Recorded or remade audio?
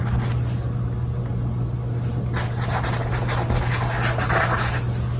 recorded